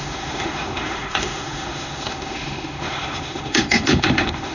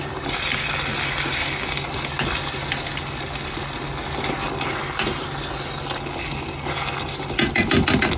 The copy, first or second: first